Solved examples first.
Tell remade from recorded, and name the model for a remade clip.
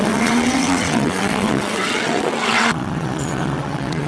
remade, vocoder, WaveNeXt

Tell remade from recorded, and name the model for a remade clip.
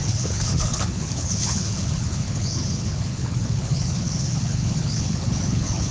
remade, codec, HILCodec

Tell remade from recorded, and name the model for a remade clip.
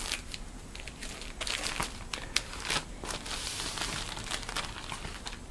recorded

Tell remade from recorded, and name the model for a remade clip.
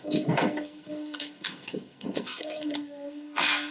remade, codec, SNAC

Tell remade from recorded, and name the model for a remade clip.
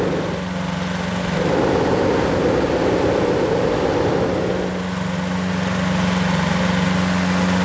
recorded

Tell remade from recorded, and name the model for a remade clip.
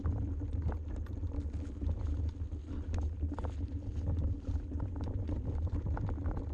recorded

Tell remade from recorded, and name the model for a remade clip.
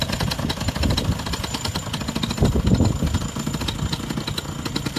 recorded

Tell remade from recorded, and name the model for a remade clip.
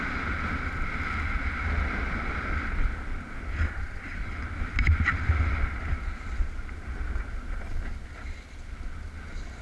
recorded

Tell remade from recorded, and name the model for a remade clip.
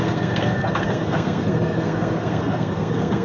remade, codec, SNAC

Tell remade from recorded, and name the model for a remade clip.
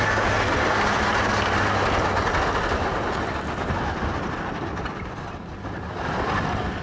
recorded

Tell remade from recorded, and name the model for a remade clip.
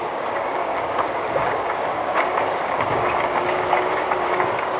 remade, codec, DAC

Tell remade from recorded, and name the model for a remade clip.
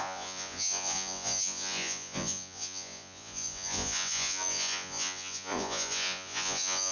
remade, vocoder, Vocos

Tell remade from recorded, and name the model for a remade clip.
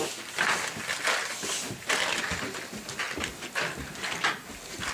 recorded